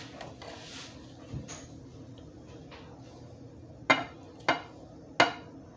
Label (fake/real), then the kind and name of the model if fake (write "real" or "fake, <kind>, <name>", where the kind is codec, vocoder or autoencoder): real